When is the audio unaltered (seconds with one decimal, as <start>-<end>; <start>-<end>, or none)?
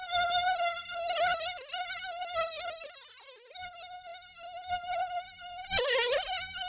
0.0-6.7